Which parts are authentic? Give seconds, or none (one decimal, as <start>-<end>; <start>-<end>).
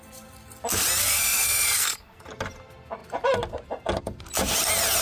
0.0-1.0; 2.2-5.0